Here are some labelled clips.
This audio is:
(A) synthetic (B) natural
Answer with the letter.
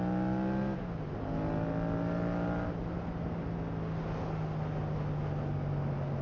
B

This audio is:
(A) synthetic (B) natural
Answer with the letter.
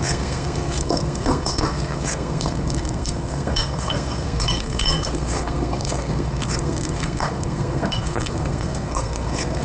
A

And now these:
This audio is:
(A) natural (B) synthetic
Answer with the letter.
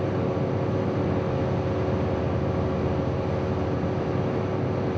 A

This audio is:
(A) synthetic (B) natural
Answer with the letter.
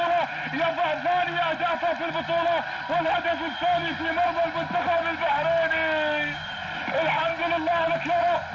B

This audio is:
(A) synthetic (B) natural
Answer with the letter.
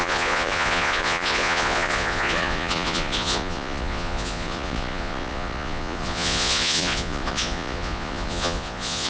A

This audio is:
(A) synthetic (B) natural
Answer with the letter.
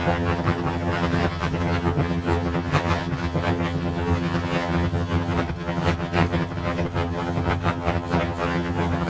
A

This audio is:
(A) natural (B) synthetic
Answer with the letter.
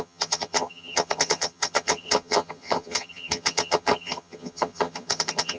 B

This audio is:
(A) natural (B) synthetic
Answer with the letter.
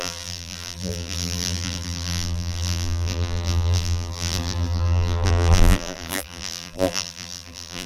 B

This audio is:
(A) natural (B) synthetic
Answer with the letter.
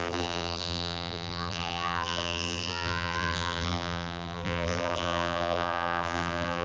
B